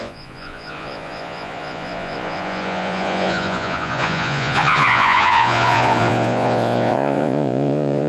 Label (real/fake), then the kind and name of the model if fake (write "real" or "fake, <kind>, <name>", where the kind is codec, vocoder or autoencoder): fake, vocoder, Vocos